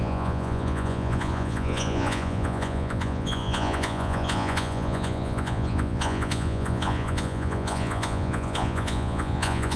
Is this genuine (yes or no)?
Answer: no